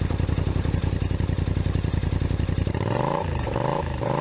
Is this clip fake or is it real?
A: fake